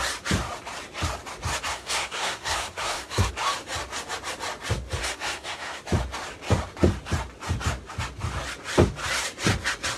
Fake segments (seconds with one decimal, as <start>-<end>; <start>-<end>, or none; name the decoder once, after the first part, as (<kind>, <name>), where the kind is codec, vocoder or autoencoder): 1.7-3.3 (codec, SNAC); 5.0-5.8